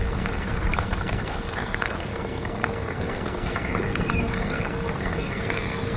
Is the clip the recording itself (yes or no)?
no